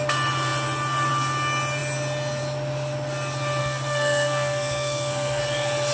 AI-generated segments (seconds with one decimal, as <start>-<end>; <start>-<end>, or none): 3.6-5.4